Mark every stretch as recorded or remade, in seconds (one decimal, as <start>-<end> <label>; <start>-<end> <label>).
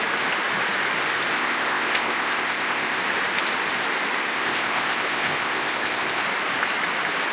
0.0-1.3 recorded; 1.3-3.0 remade; 3.0-4.3 recorded; 4.3-6.2 remade; 6.2-7.3 recorded